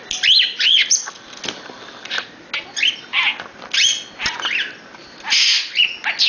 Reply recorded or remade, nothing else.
recorded